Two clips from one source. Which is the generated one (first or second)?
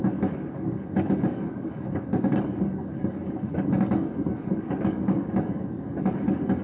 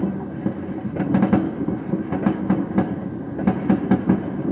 first